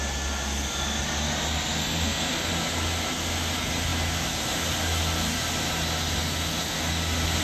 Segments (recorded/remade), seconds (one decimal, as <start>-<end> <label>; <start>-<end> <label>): 0.0-1.8 recorded; 1.8-2.5 remade; 2.5-7.4 recorded